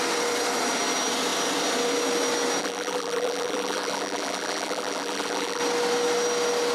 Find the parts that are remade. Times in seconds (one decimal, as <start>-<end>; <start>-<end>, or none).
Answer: 2.6-5.6